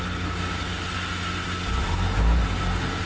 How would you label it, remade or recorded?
recorded